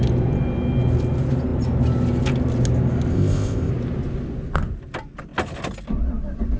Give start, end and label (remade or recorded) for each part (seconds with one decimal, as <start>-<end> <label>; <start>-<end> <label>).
0.0-3.1 recorded; 3.1-3.7 remade; 3.7-6.6 recorded